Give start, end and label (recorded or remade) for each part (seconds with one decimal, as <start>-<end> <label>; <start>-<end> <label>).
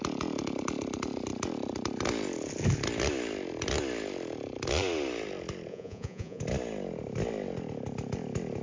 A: 0.0-5.7 recorded; 5.7-6.4 remade; 6.4-8.6 recorded